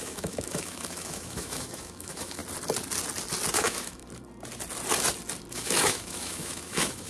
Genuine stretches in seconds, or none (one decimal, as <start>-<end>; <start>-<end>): 2.4-3.5; 4.0-5.5